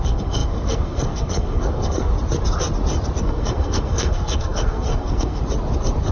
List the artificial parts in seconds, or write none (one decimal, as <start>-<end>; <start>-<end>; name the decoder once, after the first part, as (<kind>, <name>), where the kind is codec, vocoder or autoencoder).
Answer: 0.0-2.1 (codec, SNAC); 3.2-5.4